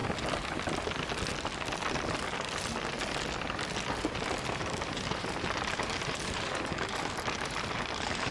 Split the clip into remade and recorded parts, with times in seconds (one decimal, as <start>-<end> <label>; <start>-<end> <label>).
0.0-3.9 recorded; 3.9-8.3 remade